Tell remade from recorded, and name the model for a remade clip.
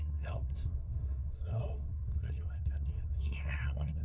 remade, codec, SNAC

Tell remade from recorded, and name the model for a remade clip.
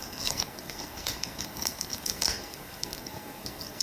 remade, codec, SNAC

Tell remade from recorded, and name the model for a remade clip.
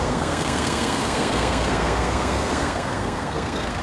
remade, codec, SNAC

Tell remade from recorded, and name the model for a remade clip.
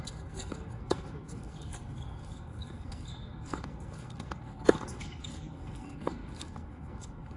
remade, codec, SNAC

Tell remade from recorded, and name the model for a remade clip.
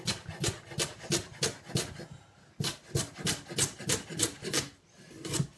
recorded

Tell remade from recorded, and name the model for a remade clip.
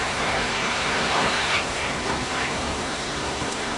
remade, codec, SNAC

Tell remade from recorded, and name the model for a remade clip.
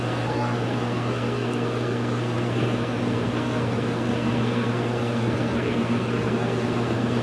remade, codec, SNAC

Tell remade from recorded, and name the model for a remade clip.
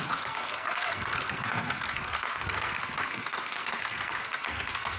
remade, codec, SNAC